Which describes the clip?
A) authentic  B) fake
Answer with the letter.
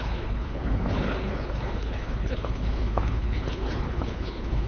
B